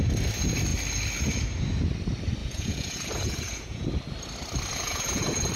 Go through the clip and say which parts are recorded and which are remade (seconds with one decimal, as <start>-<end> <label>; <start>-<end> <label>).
0.0-2.4 recorded; 2.4-3.9 remade; 3.9-4.7 recorded; 4.7-5.5 remade

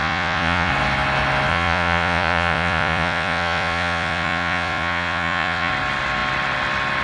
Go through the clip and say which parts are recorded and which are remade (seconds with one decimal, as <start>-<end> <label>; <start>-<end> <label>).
0.0-0.7 remade; 0.7-1.5 recorded; 1.5-5.7 remade; 5.7-7.0 recorded

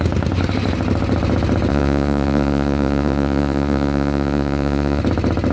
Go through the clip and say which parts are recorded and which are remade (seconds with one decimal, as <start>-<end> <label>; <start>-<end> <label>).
0.0-1.7 recorded; 1.7-5.0 remade; 5.0-5.5 recorded

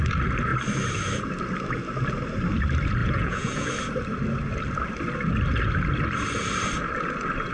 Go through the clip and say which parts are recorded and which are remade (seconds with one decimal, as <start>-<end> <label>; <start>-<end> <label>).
0.0-3.0 recorded; 3.0-3.7 remade; 3.7-7.5 recorded

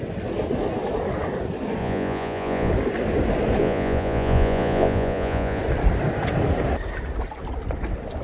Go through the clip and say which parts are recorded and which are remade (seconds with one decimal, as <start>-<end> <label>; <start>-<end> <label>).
0.0-1.8 recorded; 1.8-2.7 remade; 2.7-3.6 recorded; 3.6-5.6 remade; 5.6-8.2 recorded

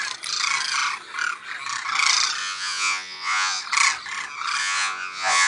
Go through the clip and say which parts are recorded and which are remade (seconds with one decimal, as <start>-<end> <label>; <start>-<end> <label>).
0.0-2.4 recorded; 2.4-3.6 remade; 3.6-4.6 recorded; 4.6-5.5 remade

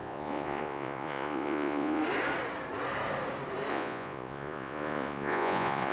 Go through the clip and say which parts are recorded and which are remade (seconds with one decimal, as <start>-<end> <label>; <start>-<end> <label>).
0.0-2.0 remade; 2.0-3.7 recorded; 3.7-5.9 remade

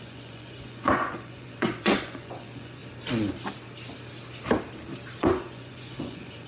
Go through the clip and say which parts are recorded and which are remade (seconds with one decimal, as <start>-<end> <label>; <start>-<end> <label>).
0.0-2.8 remade; 2.8-5.2 recorded; 5.2-6.5 remade